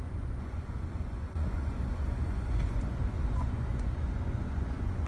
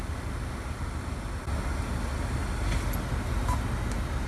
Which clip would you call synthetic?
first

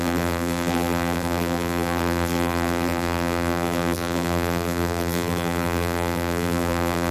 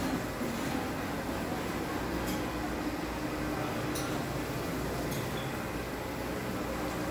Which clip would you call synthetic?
first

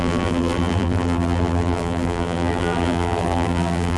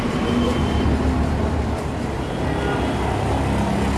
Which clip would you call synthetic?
first